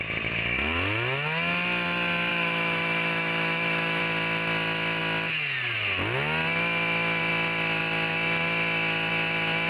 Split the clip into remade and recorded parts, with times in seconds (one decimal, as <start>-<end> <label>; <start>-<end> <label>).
0.0-2.3 recorded; 2.3-4.0 remade; 4.0-9.7 recorded